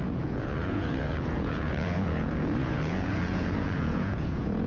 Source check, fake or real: fake